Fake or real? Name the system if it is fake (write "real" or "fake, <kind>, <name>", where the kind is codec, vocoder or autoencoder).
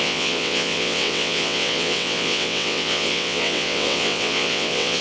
fake, vocoder, WaveNeXt